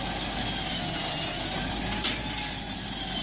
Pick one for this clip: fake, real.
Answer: real